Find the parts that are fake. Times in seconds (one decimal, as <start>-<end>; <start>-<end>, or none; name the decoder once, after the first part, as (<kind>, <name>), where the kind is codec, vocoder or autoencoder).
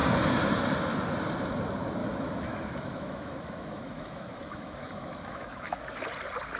2.0-6.0 (autoencoder, DAC-VAE)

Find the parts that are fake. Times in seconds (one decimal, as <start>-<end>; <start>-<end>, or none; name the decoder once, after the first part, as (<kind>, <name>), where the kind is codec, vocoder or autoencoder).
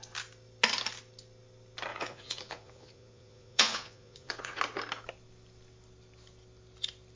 1.9-4.6 (vocoder, Vocos)